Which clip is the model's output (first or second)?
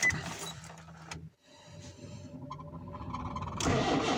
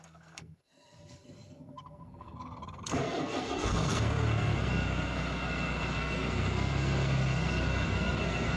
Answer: second